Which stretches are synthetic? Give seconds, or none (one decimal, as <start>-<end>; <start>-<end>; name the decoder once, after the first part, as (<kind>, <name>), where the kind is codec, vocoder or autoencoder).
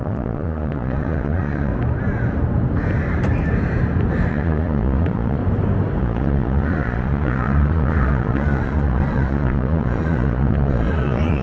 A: 0.0-1.7 (vocoder, Vocos); 4.3-5.4; 6.0-11.4